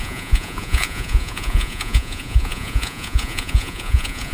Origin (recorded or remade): remade